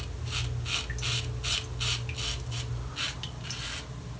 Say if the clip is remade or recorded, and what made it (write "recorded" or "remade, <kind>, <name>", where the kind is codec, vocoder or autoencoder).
recorded